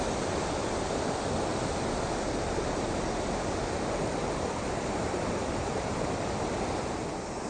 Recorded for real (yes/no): yes